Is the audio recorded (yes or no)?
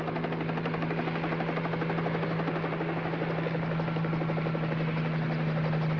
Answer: yes